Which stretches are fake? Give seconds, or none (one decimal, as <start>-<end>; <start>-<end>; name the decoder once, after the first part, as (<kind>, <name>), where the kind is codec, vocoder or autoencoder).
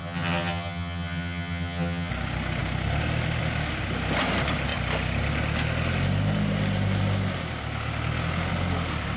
0.0-2.1 (vocoder, HiFi-GAN)